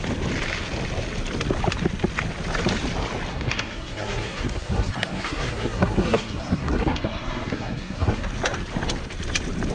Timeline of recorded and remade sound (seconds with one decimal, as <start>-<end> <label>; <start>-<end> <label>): 0.0-3.3 recorded; 3.3-8.3 remade; 8.3-9.7 recorded

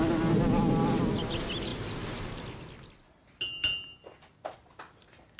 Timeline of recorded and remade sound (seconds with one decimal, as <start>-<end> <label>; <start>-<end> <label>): 0.0-5.4 recorded

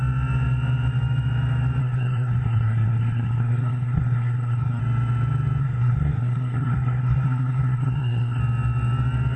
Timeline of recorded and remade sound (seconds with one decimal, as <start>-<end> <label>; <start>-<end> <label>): 0.0-1.8 recorded; 1.8-4.8 remade; 4.8-5.6 recorded; 5.6-8.4 remade; 8.4-9.4 recorded

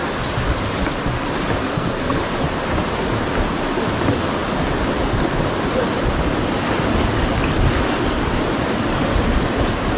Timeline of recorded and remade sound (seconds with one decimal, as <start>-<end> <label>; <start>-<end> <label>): 0.0-1.6 recorded; 1.6-2.2 remade; 2.2-10.0 recorded

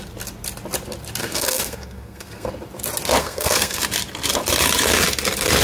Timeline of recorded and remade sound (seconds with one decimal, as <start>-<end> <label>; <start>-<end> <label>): 0.0-1.2 recorded; 1.2-2.5 remade; 2.5-3.2 recorded; 3.2-3.8 remade; 3.8-5.6 recorded